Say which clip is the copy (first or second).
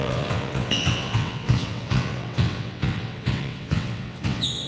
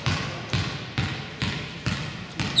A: first